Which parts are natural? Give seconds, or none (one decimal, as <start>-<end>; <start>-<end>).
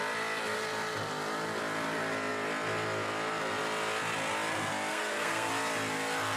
0.0-4.9; 5.5-6.4